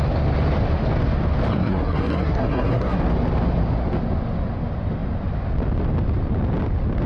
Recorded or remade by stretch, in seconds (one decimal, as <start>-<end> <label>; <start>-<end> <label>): 0.0-1.5 recorded; 1.5-3.0 remade; 3.0-7.1 recorded